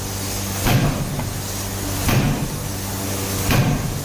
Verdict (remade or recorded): recorded